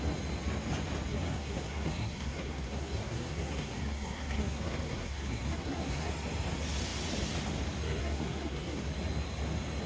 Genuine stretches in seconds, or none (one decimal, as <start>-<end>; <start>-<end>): 0.0-1.1; 6.1-8.0; 8.9-9.9